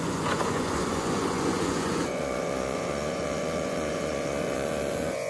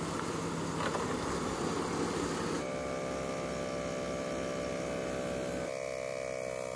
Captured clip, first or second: second